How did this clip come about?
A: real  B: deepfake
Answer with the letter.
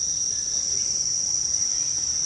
A